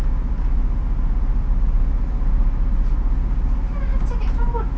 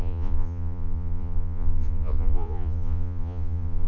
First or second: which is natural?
first